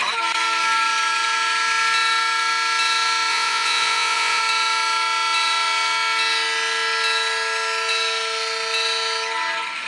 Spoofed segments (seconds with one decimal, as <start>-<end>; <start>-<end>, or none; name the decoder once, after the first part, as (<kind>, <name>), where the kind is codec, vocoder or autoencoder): 3.3-4.4 (vocoder, Vocos)